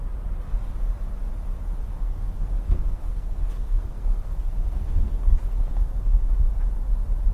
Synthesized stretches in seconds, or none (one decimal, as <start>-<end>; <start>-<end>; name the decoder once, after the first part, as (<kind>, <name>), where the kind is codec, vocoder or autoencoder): 1.9-6.3 (codec, SNAC)